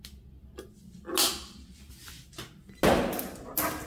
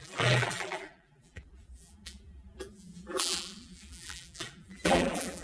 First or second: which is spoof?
second